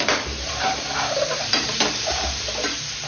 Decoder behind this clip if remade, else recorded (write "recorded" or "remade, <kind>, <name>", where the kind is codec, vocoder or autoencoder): remade, vocoder, BigVGAN v2